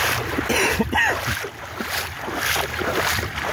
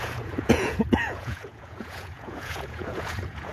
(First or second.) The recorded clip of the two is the first